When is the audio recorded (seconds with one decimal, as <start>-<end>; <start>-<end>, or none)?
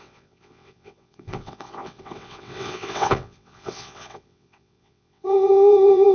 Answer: none